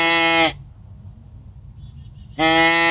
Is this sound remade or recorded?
recorded